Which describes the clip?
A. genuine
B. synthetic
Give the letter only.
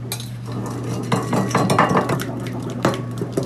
A